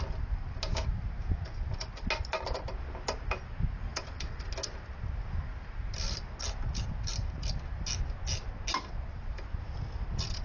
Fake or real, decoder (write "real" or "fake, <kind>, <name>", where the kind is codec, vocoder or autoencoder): real